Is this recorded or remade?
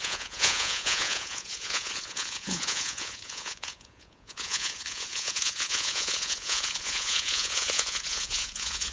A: remade